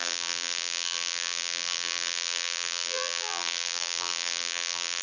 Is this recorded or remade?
remade